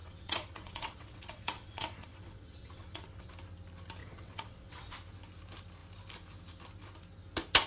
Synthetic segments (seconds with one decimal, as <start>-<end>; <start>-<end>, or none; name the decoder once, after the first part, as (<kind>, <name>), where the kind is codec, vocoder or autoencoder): 0.0-3.3 (vocoder, WaveNeXt); 4.0-4.9